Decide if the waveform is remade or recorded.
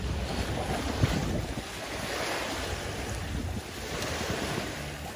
recorded